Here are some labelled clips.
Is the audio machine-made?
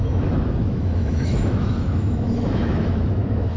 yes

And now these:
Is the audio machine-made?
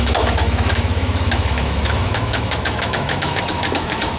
yes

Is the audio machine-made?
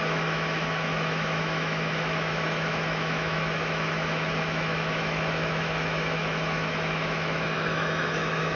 yes